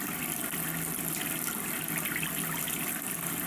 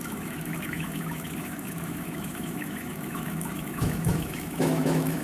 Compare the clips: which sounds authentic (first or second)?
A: first